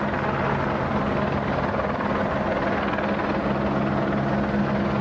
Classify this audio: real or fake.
real